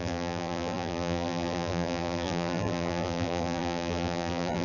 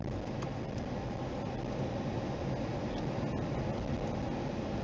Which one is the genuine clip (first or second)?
second